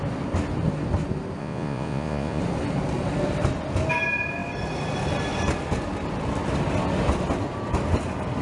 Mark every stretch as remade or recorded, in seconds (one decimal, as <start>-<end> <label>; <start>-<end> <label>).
0.0-1.4 recorded; 1.4-2.4 remade; 2.4-8.4 recorded